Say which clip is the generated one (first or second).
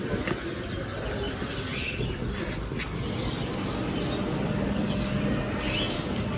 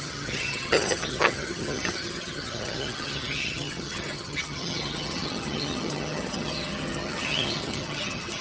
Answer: second